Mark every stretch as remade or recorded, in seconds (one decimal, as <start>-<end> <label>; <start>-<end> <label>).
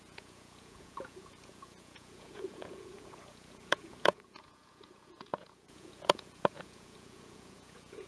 0.0-8.1 remade